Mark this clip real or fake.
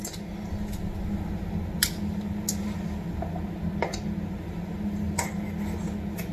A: real